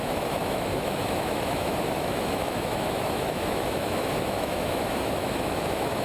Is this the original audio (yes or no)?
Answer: no